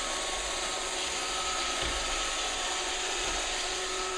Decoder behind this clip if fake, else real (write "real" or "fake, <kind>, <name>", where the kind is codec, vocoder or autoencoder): fake, vocoder, Vocos